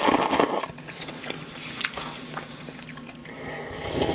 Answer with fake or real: real